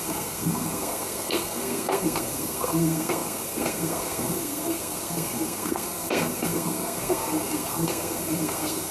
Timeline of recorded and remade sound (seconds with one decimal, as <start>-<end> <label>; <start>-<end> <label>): 0.0-8.9 remade